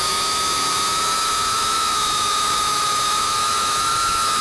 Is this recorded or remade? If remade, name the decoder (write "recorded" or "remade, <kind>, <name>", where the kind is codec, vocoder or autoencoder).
remade, autoencoder, DAC-VAE